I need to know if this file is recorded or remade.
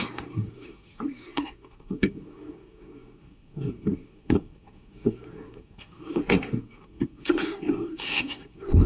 remade